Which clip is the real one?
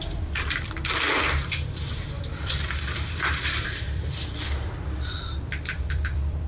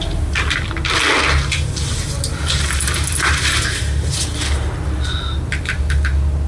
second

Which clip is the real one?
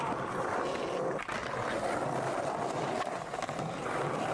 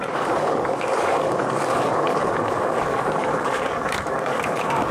first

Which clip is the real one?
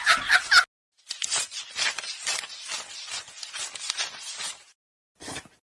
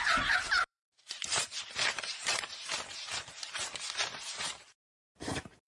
first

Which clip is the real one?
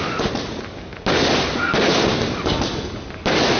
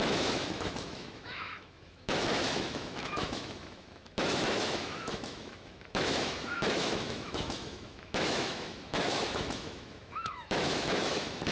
first